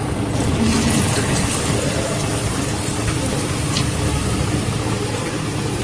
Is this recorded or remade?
recorded